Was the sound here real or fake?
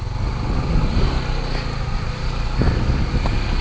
real